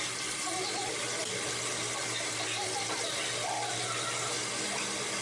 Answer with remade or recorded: recorded